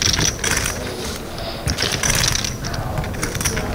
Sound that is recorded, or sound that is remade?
recorded